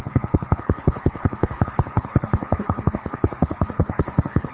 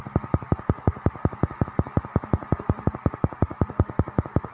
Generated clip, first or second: first